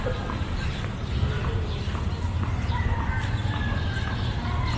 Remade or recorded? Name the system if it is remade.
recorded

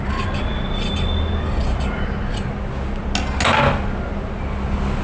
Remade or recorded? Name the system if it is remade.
recorded